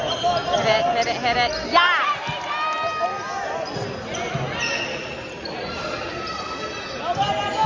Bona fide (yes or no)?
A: yes